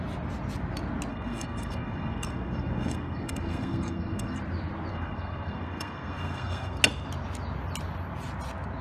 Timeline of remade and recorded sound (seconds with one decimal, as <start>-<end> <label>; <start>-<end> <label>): 0.0-1.1 recorded; 1.1-4.4 remade; 4.4-4.9 recorded; 4.9-6.8 remade; 6.8-8.8 recorded